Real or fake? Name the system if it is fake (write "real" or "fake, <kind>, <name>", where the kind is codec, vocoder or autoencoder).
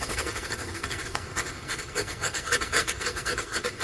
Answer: fake, codec, SNAC